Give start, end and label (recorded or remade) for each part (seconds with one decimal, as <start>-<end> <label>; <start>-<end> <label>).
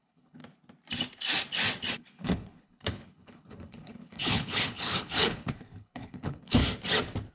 0.0-0.4 remade; 0.4-1.9 recorded; 1.9-6.6 remade; 6.6-7.3 recorded